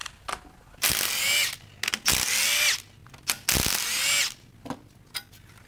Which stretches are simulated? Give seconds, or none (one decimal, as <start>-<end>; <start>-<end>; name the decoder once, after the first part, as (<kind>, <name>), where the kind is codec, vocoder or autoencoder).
0.0-0.9 (vocoder, BigVGAN v2)